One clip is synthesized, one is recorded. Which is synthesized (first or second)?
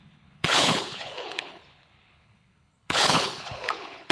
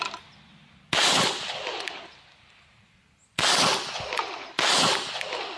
first